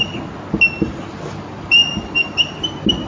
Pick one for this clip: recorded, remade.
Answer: recorded